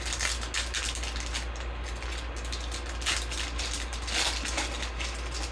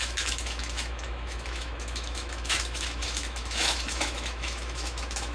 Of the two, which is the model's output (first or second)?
second